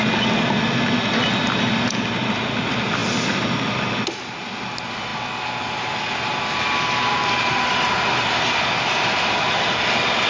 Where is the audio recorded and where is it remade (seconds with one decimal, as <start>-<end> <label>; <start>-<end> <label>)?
0.0-10.3 recorded